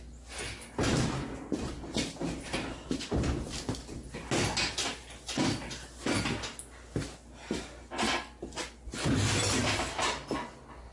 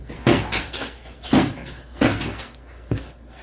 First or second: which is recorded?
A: first